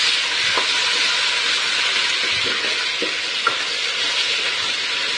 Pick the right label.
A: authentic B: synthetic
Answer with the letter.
A